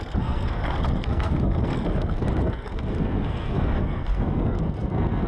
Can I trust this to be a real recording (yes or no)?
no